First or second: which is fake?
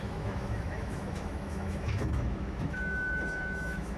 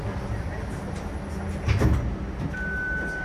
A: first